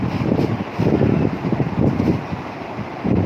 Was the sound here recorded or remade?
recorded